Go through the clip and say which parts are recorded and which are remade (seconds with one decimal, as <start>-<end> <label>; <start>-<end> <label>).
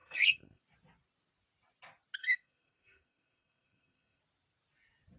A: 0.0-0.6 remade; 0.6-2.2 recorded; 2.2-4.2 remade; 4.2-5.2 recorded